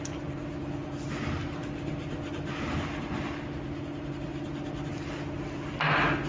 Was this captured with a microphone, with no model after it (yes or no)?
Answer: yes